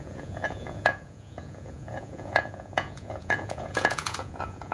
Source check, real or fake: fake